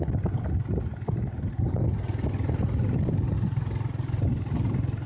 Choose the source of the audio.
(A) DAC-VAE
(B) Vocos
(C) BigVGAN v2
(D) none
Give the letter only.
D